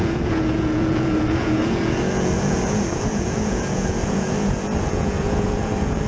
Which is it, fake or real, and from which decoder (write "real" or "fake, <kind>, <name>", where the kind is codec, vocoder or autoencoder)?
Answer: fake, vocoder, Vocos